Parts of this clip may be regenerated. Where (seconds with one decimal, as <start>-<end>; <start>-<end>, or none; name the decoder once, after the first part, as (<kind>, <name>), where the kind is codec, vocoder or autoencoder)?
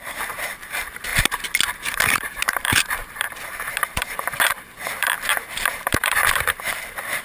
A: 0.0-1.1 (vocoder, BigVGAN v2); 1.9-7.2